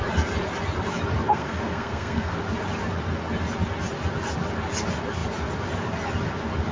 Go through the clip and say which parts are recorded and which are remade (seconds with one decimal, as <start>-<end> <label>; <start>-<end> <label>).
0.0-1.3 recorded; 1.3-2.4 remade; 2.4-6.7 recorded